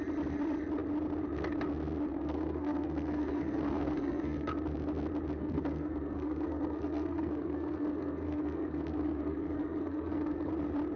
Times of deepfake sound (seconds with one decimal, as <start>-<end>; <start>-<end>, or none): 2.1-4.5; 5.4-10.5